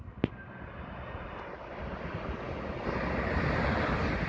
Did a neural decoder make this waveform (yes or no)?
no